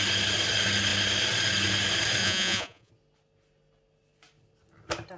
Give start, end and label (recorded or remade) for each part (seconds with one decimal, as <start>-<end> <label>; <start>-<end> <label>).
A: 0.0-2.2 recorded; 2.2-2.9 remade; 2.9-5.2 recorded